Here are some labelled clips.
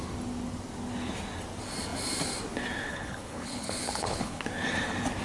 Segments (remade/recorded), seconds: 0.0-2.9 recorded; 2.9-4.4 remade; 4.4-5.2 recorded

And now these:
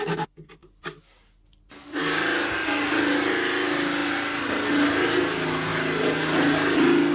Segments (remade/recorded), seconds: 0.0-7.1 recorded

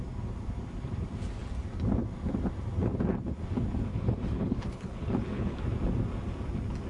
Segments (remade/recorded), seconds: 0.0-3.9 recorded; 3.9-5.6 remade; 5.6-6.9 recorded